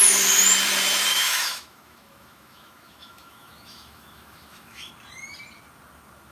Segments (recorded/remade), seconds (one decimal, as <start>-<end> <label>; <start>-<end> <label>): 0.0-1.1 recorded; 1.1-4.9 remade; 4.9-6.3 recorded